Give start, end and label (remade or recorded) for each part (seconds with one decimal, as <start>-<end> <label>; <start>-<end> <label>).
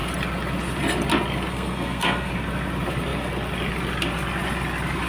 0.0-1.5 recorded; 1.5-2.3 remade; 2.3-5.1 recorded